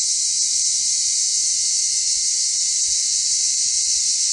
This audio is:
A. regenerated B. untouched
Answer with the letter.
B